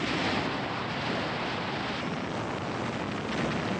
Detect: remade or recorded recorded